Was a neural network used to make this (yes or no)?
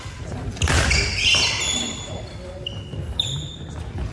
no